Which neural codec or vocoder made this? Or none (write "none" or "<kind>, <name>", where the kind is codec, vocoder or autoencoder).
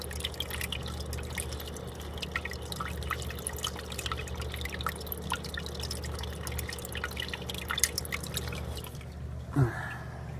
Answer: none